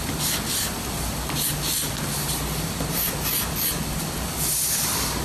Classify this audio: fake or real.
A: real